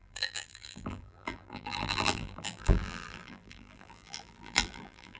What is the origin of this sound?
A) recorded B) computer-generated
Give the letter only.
B